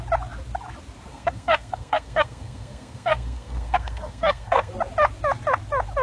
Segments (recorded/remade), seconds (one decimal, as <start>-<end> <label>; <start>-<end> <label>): 0.0-1.1 recorded; 1.1-4.7 remade; 4.7-6.0 recorded